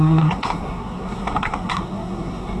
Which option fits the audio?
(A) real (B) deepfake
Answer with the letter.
B